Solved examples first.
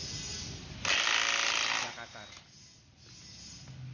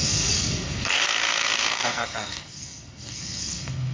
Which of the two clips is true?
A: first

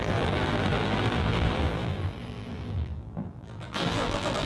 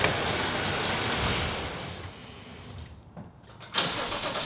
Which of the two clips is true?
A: second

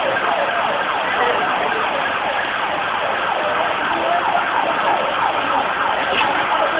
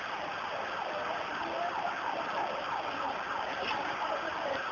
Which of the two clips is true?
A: first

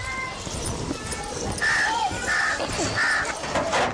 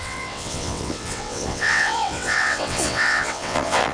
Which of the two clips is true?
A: first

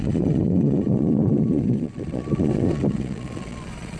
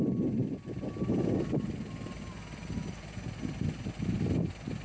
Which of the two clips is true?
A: second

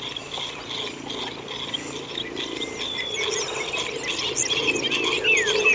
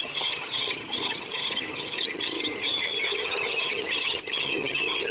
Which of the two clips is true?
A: first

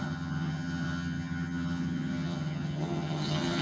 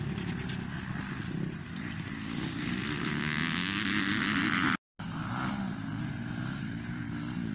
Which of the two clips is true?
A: second